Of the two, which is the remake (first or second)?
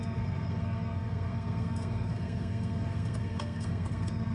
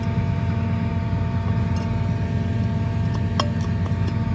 first